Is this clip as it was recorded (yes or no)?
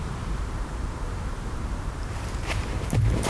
no